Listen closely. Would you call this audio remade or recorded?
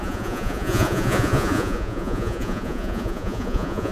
remade